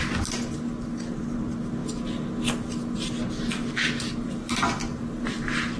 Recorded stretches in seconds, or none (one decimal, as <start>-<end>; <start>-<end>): 0.0-4.8